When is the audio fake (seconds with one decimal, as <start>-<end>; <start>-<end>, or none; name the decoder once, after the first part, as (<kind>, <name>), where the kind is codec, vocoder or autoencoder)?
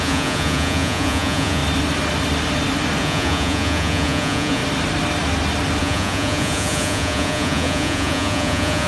0.0-1.6 (vocoder, Vocos); 3.0-4.6; 5.8-8.9